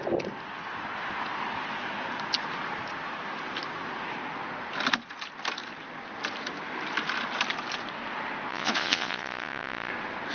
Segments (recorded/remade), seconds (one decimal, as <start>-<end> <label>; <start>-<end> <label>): 0.0-8.5 recorded; 8.5-9.9 remade; 9.9-10.3 recorded